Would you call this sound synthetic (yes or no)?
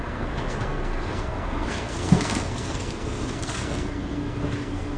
yes